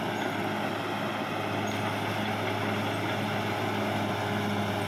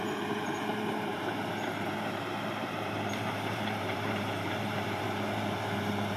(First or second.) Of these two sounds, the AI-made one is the second